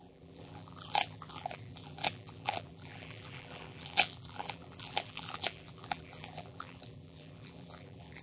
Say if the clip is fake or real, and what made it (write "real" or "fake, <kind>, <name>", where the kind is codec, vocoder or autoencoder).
fake, vocoder, BigVGAN v2